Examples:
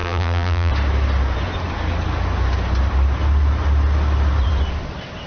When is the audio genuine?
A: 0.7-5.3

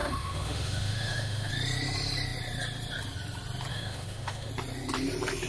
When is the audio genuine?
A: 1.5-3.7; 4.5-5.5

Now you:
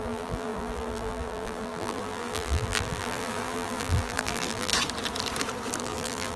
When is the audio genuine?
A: 4.7-5.8

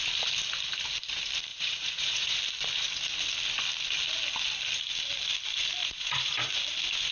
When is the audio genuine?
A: 0.0-1.5; 2.4-5.8; 6.5-7.1

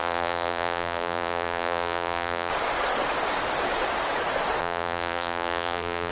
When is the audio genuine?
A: 2.5-4.6

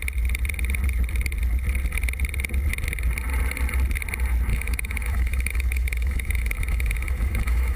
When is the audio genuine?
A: 0.0-4.5

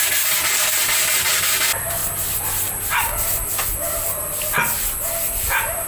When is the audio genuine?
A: 0.0-5.9

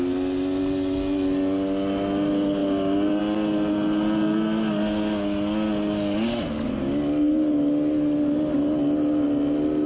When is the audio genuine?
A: 0.0-9.9